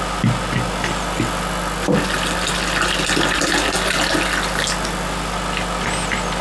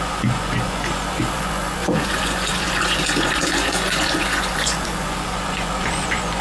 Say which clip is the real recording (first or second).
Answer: first